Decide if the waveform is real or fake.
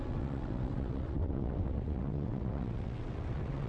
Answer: fake